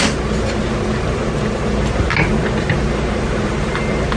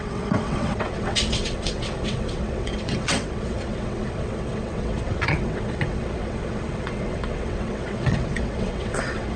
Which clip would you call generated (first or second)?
second